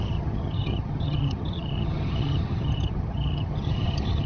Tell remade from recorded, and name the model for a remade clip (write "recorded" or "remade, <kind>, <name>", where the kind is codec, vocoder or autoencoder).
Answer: remade, vocoder, HiFi-GAN